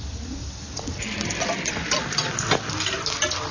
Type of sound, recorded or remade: recorded